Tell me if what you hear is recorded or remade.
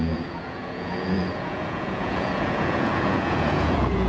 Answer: remade